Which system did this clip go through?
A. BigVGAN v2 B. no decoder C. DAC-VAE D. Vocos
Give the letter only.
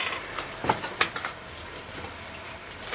A